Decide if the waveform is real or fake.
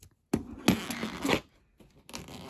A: real